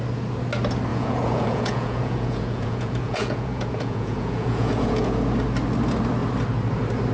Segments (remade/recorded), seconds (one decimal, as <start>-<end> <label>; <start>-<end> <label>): 0.0-0.9 recorded; 0.9-5.2 remade; 5.2-7.1 recorded

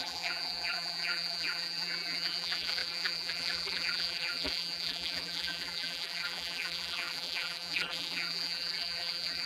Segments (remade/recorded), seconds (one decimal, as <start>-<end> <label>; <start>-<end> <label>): 0.0-9.5 remade